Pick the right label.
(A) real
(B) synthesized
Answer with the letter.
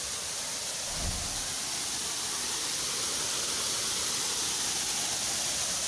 A